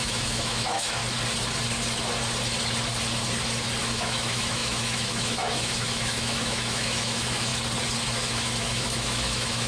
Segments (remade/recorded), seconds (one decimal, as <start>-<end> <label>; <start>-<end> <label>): 0.0-1.0 remade; 1.0-3.8 recorded; 3.8-7.5 remade; 7.5-8.0 recorded; 8.0-9.7 remade

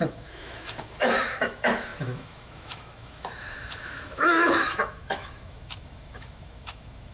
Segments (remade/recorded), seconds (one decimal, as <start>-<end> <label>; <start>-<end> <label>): 0.0-7.1 remade

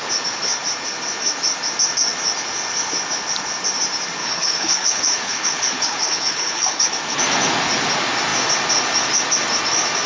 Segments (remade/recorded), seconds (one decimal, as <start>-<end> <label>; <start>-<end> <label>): 0.0-4.2 recorded; 4.2-6.9 remade; 6.9-10.1 recorded

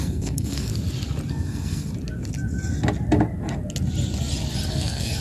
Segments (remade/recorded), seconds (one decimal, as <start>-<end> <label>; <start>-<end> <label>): 0.0-0.7 remade; 0.7-1.3 recorded; 1.3-1.9 remade; 1.9-4.7 recorded; 4.7-5.2 remade

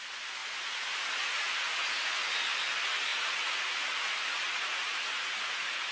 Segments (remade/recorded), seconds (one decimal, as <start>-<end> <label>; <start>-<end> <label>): 0.0-0.4 recorded; 0.4-2.0 remade; 2.0-3.1 recorded; 3.1-5.9 remade

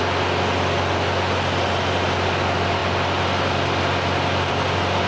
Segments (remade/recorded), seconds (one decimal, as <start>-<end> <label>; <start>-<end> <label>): 0.0-5.1 recorded

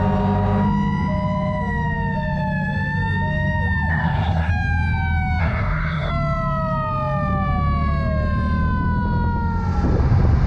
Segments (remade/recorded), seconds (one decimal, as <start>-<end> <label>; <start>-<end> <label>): 0.0-3.9 recorded; 3.9-4.5 remade; 4.5-5.4 recorded; 5.4-6.1 remade; 6.1-10.5 recorded